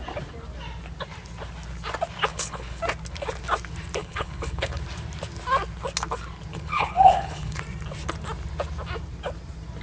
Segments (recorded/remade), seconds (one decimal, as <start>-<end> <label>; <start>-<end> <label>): 0.0-2.3 recorded; 2.3-2.8 remade; 2.8-4.0 recorded; 4.0-4.8 remade; 4.8-6.5 recorded; 6.5-7.6 remade; 7.6-9.8 recorded